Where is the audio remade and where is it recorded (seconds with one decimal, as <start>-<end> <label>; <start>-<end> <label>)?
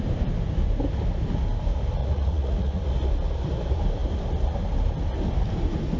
0.0-2.0 recorded; 2.0-2.9 remade; 2.9-6.0 recorded